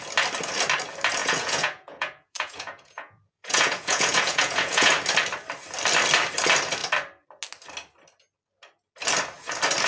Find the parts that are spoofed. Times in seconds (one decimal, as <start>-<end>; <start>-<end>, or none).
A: 1.2-4.9